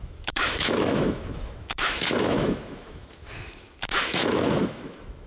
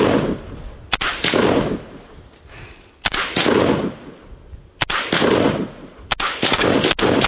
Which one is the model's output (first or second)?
first